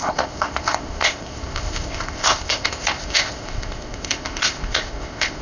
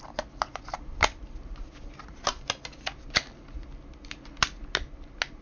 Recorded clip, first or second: second